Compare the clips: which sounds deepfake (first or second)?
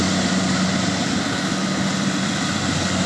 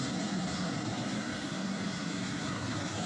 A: second